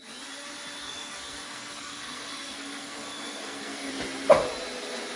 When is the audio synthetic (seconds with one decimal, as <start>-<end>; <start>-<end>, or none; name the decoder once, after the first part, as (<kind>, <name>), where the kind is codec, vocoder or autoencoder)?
0.8-3.9 (codec, SNAC)